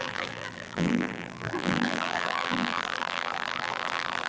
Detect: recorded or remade remade